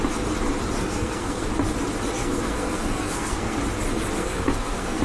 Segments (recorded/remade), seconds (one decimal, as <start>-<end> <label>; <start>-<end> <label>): 0.0-0.8 recorded; 0.8-1.5 remade; 1.5-2.2 recorded; 2.2-3.6 remade; 3.6-4.2 recorded; 4.2-5.0 remade